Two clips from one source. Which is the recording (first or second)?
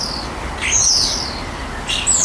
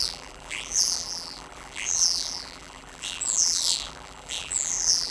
first